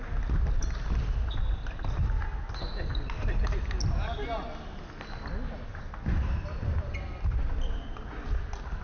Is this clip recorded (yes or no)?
yes